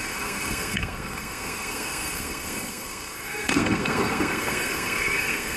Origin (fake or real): fake